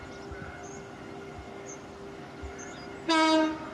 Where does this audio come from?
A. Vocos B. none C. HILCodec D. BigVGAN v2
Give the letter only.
B